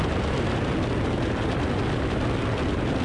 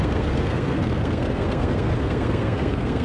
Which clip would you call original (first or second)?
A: first